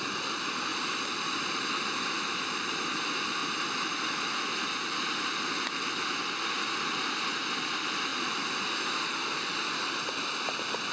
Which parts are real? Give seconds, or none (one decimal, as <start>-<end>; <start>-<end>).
0.0-0.7; 2.1-3.4; 4.2-8.1; 8.7-10.9